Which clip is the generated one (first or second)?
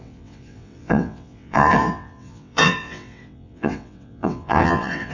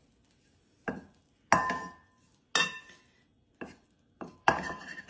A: first